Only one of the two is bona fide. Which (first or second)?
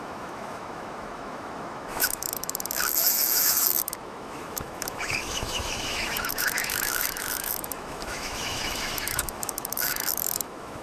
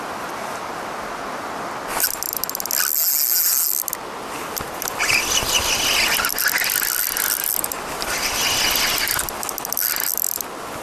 second